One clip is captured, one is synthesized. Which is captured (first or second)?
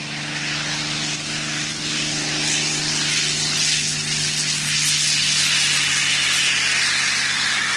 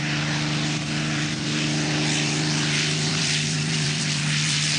first